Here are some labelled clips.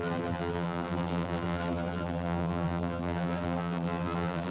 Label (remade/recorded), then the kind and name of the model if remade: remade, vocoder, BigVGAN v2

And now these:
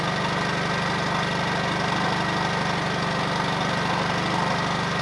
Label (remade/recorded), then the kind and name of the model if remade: recorded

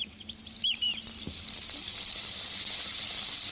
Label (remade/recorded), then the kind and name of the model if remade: remade, vocoder, BigVGAN v2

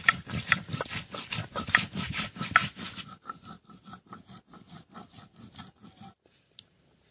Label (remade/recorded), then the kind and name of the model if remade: recorded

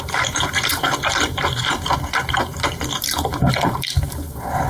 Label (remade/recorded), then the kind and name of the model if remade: remade, vocoder, BigVGAN v2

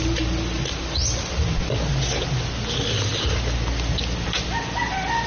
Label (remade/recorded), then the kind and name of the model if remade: recorded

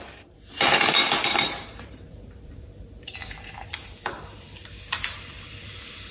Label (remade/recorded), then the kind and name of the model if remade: remade, vocoder, BigVGAN v2